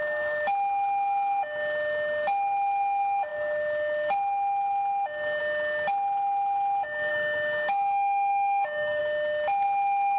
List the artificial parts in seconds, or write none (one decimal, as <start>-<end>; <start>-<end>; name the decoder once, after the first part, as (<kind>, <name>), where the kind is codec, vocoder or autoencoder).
7.1-9.0 (autoencoder, DAC-VAE)